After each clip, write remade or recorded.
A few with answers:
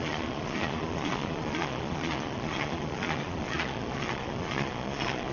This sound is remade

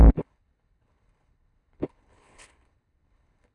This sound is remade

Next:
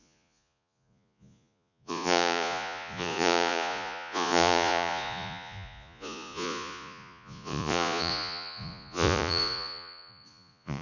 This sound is remade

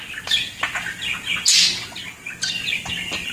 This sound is recorded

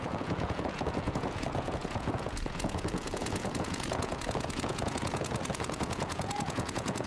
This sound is remade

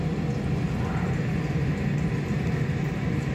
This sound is remade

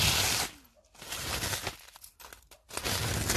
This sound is recorded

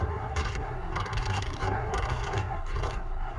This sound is remade